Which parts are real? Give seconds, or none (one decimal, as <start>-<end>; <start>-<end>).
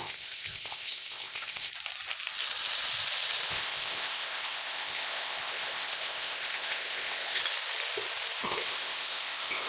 1.7-3.5; 7.4-8.4